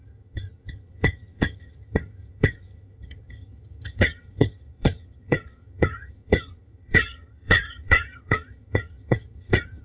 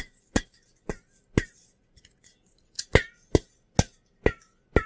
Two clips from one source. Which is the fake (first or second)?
first